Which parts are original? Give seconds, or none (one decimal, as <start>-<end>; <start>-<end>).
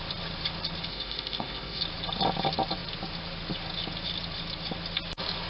0.0-0.9; 1.8-5.5